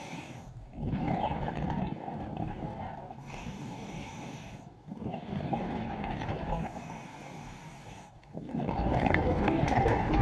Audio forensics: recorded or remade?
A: remade